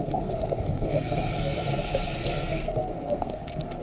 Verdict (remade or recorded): remade